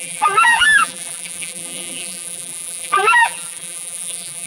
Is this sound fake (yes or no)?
yes